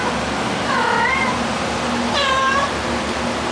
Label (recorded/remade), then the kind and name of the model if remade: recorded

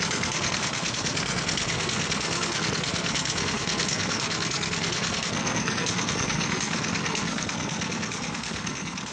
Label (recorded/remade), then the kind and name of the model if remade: remade, codec, SNAC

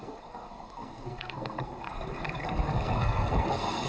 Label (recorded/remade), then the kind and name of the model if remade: remade, codec, SNAC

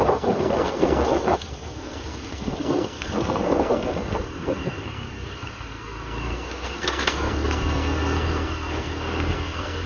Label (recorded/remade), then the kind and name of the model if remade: remade, codec, SNAC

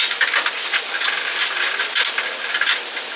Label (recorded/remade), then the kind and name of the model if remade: recorded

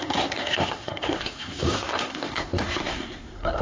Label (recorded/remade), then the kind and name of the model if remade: remade, codec, SNAC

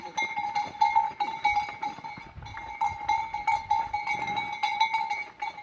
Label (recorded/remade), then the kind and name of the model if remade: recorded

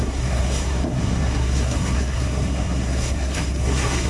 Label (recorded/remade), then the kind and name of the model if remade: remade, codec, SNAC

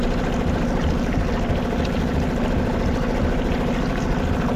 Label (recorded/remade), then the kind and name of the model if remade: recorded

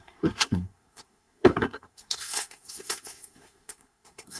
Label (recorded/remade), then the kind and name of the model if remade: remade, codec, SNAC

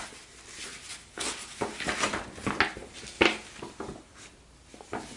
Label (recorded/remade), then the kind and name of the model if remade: recorded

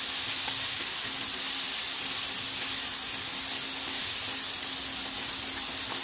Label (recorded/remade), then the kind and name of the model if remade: recorded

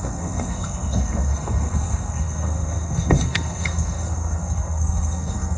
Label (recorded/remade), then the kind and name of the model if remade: remade, codec, SNAC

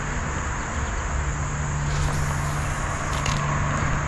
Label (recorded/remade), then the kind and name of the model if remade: recorded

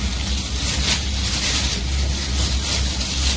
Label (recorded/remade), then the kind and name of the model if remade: recorded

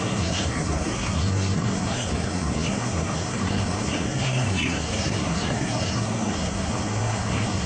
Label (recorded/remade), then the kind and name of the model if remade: remade, codec, SNAC